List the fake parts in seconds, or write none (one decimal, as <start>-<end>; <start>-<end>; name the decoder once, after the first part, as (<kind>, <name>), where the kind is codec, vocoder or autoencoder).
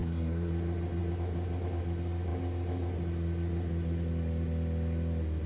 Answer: 0.0-0.5 (codec, SNAC)